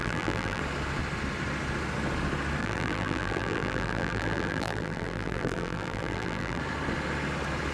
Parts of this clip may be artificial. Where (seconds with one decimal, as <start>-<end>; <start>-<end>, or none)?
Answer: 0.0-0.6; 2.6-6.6